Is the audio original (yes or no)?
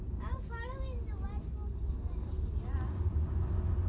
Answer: yes